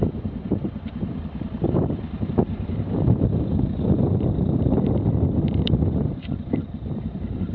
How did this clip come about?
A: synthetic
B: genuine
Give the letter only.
A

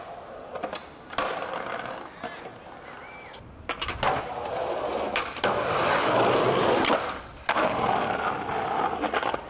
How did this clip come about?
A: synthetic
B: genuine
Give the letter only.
B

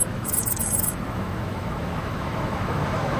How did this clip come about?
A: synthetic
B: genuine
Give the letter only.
A